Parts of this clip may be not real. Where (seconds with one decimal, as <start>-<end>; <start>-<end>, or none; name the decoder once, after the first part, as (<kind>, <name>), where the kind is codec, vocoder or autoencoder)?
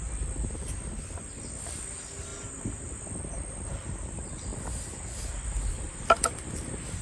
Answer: none